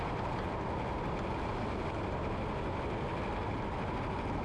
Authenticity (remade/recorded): recorded